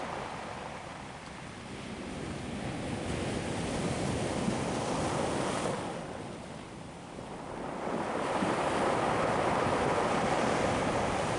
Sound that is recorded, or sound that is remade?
recorded